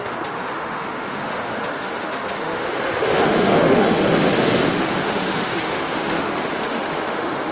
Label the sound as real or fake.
fake